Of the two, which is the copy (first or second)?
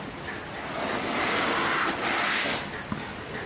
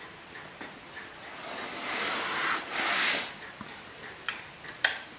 second